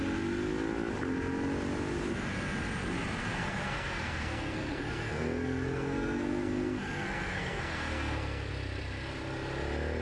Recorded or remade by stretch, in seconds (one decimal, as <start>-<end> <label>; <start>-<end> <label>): 0.0-3.2 recorded; 3.2-8.5 remade; 8.5-10.0 recorded